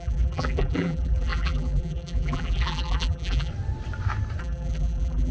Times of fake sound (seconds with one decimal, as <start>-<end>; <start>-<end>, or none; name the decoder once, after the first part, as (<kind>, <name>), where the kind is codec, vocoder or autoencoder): 0.0-3.5 (vocoder, BigVGAN v2); 4.4-5.3